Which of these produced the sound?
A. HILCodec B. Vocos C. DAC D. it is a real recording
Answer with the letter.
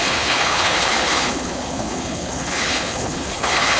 A